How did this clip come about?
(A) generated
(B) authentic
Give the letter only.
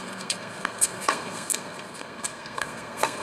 A